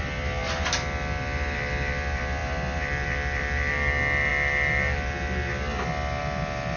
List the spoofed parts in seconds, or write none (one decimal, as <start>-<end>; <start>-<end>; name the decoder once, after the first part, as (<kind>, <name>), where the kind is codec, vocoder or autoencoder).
none